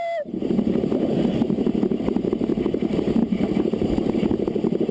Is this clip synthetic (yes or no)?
no